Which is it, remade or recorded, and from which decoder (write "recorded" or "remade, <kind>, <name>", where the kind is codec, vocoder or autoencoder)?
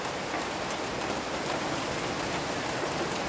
recorded